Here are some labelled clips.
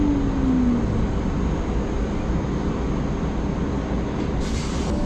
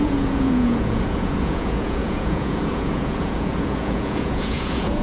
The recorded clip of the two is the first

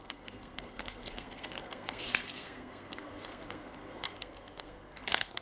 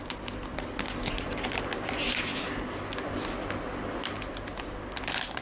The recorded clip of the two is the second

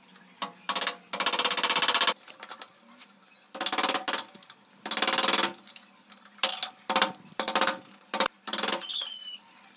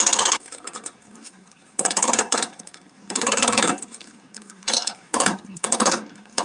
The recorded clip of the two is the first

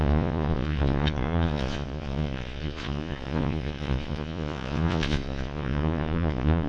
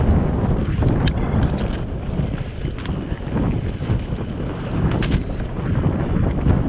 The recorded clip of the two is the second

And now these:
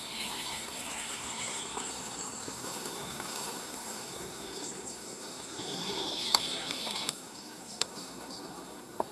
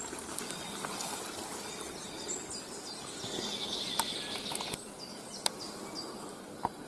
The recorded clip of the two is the second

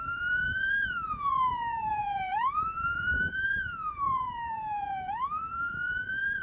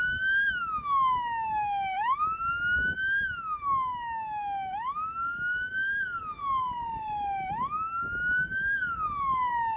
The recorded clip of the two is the second